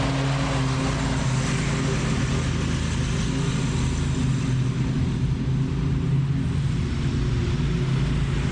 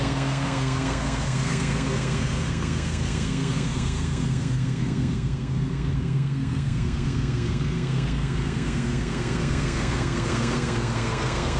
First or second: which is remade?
second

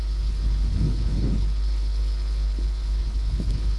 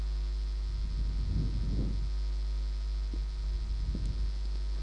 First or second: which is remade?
first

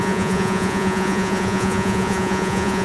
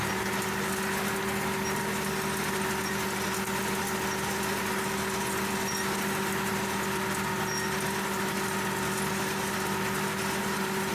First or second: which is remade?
first